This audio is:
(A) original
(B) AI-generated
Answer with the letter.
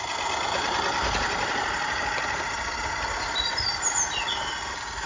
A